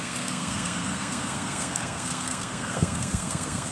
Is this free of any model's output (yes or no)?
no